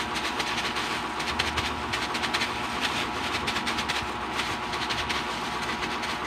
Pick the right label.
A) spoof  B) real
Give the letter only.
B